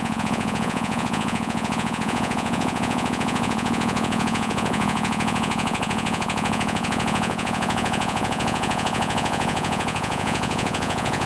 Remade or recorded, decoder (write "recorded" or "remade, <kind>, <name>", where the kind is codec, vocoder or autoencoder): remade, vocoder, Vocos